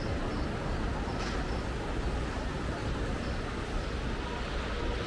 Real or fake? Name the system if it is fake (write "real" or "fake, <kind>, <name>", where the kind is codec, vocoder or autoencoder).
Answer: real